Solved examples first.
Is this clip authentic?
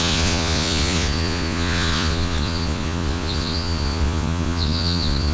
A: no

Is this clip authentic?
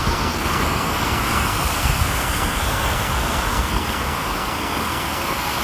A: no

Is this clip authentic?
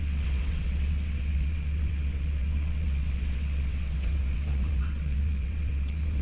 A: no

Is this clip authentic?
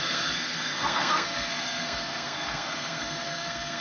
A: no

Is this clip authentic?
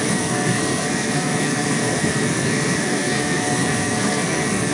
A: no